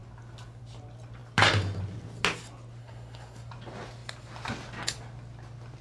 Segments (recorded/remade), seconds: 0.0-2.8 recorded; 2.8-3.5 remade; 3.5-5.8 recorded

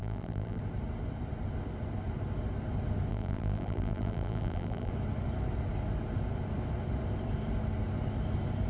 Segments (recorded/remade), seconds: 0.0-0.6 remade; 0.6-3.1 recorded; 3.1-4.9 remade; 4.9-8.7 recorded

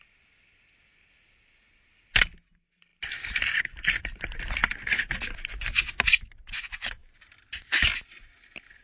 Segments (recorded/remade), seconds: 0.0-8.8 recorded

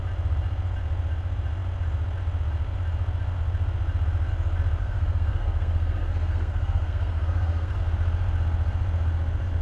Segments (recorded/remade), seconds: 0.0-4.8 recorded; 4.8-7.8 remade; 7.8-9.6 recorded